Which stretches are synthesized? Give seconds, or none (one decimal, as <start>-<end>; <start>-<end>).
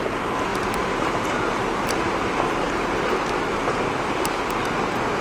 0.5-3.6